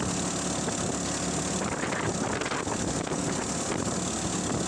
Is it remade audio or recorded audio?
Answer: recorded